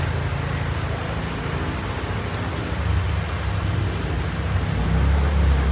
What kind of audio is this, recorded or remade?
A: recorded